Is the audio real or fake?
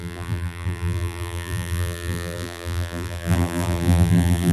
fake